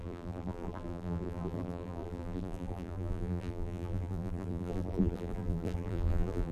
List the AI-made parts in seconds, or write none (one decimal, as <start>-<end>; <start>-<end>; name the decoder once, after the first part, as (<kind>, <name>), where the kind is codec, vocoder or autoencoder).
0.0-6.5 (vocoder, BigVGAN v2)